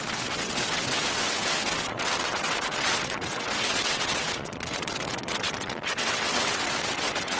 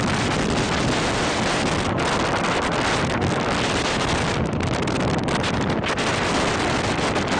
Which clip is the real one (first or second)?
second